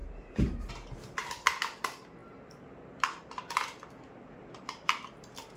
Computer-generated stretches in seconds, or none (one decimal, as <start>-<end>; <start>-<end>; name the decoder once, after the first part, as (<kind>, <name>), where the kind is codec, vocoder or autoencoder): none